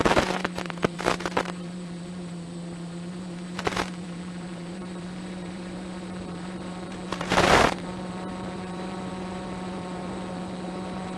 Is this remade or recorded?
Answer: remade